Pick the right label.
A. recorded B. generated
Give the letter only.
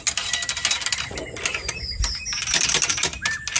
A